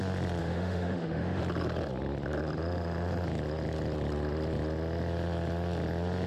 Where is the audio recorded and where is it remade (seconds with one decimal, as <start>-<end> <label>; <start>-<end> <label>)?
0.0-0.4 recorded; 0.4-1.4 remade; 1.4-6.3 recorded